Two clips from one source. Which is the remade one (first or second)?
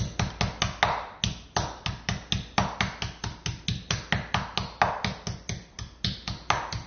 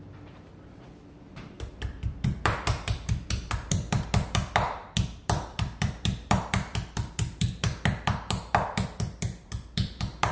second